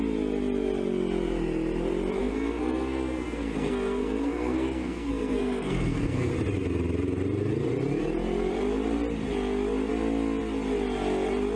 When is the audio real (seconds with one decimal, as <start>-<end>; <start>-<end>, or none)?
0.0-2.2; 6.3-11.6